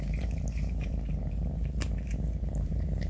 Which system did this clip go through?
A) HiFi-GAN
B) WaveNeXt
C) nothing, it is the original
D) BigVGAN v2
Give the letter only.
D